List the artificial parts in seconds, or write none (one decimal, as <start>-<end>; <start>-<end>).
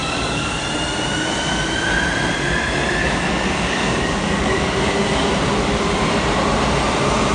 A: 0.0-0.6; 3.0-5.3